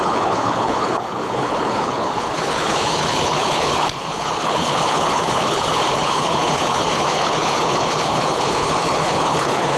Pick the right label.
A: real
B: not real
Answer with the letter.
B